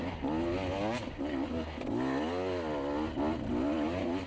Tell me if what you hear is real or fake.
real